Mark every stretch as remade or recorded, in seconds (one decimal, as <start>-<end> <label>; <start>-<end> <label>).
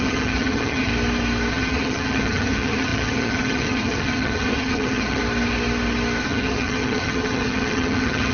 0.0-0.9 remade; 0.9-1.5 recorded; 1.5-5.2 remade; 5.2-6.2 recorded; 6.2-8.3 remade